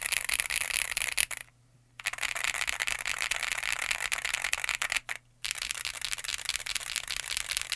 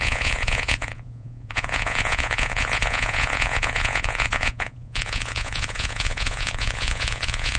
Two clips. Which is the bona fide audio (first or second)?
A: first